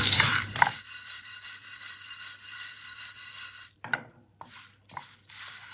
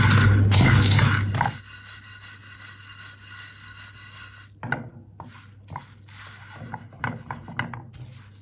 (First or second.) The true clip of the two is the second